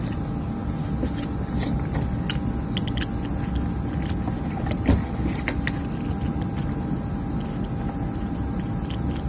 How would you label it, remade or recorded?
recorded